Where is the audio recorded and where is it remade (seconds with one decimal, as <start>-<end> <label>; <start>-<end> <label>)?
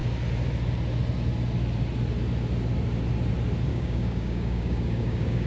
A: 0.0-3.7 recorded; 3.7-5.5 remade